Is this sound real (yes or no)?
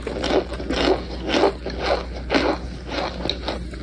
yes